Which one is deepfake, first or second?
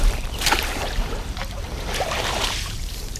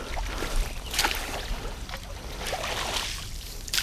first